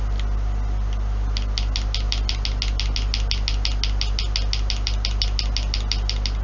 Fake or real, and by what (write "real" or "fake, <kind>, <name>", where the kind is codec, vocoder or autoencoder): real